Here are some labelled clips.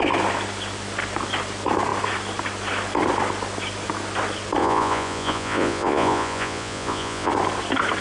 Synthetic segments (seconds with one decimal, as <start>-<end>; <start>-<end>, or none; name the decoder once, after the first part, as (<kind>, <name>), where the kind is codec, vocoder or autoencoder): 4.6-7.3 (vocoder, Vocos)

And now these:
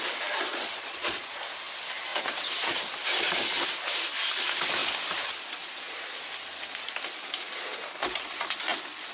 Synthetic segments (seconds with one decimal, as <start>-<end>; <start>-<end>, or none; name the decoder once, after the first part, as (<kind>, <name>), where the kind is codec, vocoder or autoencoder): 0.5-1.4 (vocoder, Vocos)

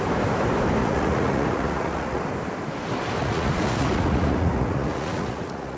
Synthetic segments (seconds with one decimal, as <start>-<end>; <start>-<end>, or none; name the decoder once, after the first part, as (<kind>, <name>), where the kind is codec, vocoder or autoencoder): 0.8-2.2 (vocoder, Vocos); 3.2-5.8